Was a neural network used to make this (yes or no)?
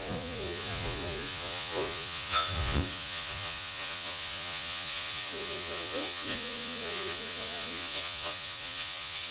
yes